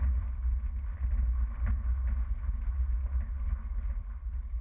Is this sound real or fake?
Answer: real